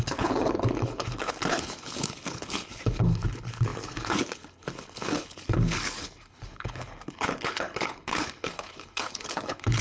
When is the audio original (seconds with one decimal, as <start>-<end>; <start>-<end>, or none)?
none